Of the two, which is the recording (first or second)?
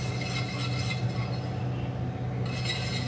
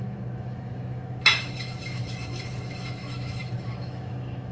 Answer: first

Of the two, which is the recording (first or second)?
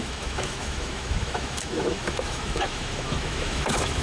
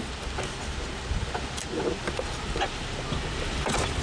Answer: second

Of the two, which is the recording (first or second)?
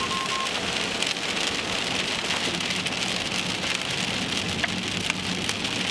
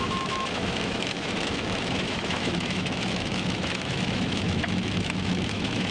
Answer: first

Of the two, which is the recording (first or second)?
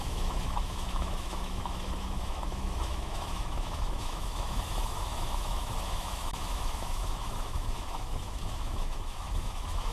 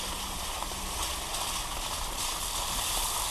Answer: second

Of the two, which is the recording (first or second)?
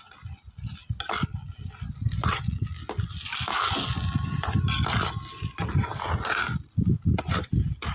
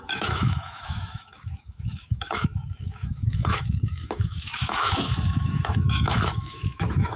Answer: first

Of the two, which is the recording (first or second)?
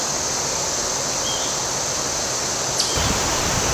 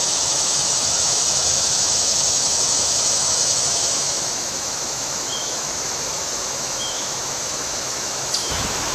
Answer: first